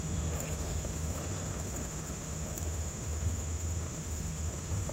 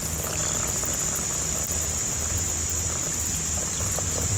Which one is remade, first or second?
first